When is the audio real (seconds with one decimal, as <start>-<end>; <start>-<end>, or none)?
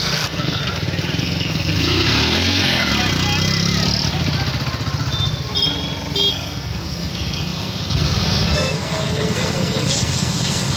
0.6-1.2; 2.9-6.3